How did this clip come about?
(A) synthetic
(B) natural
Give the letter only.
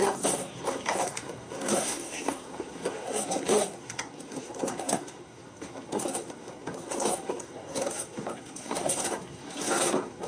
A